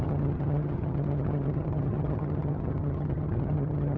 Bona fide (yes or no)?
no